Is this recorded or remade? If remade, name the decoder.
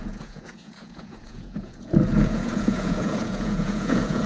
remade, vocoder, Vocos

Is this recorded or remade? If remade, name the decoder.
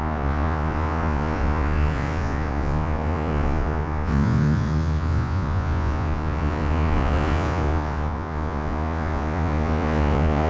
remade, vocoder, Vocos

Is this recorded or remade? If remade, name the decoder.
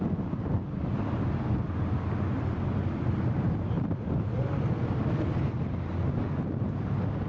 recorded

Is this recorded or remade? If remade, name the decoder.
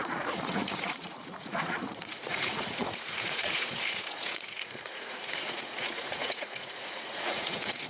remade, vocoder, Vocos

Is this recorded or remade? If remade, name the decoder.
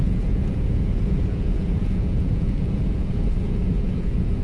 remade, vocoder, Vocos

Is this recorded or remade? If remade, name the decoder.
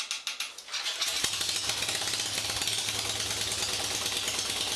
recorded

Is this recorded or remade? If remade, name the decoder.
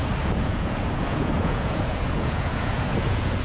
remade, vocoder, Vocos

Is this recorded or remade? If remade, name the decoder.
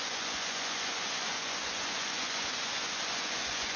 remade, vocoder, Vocos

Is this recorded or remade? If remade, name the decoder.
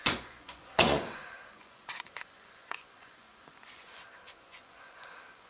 remade, vocoder, Vocos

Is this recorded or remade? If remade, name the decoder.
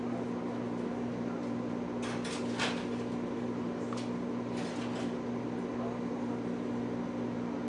recorded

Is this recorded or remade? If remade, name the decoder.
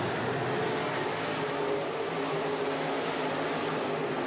recorded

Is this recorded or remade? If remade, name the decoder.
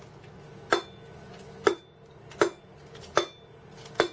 recorded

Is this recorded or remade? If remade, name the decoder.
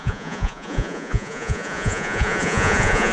remade, vocoder, Vocos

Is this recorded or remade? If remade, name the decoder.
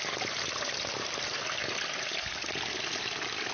recorded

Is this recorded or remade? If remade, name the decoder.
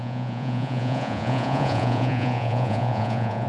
remade, vocoder, Vocos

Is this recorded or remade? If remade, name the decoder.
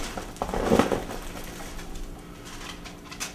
recorded